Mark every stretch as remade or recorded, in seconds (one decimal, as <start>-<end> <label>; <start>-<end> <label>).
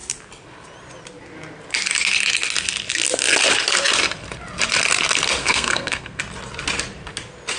0.0-5.4 recorded; 5.4-6.2 remade; 6.2-7.6 recorded